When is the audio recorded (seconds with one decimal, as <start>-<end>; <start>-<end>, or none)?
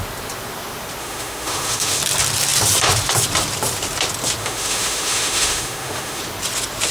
0.0-1.0; 2.0-4.4; 6.2-6.9